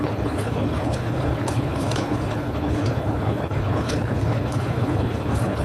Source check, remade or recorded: remade